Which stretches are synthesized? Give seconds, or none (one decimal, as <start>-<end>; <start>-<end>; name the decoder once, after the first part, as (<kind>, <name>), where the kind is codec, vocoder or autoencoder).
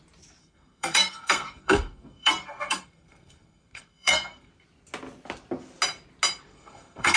0.4-4.5 (codec, SNAC); 6.5-7.2